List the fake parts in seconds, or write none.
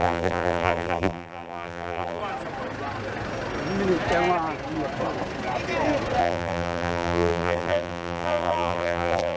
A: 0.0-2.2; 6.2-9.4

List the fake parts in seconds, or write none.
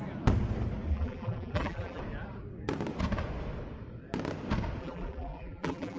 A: 0.9-2.0; 4.8-6.0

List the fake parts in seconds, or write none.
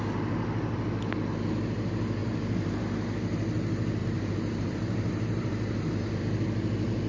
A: 2.2-2.9; 4.0-6.2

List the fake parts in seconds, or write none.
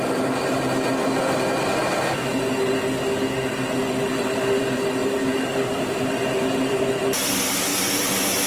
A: 5.0-6.9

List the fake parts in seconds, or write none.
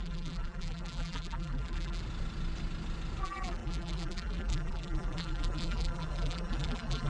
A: 0.0-2.0; 3.2-7.1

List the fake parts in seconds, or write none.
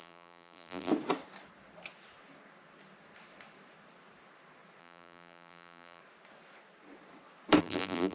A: 0.0-0.9; 4.8-6.0; 7.6-8.1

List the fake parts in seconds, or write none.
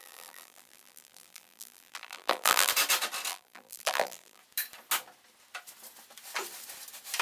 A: 0.0-2.7; 3.3-4.4